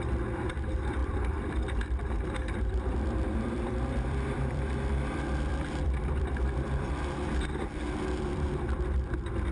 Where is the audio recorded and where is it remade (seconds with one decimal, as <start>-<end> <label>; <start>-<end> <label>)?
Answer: 0.0-9.5 remade